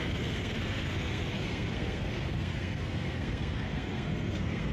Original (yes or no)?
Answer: no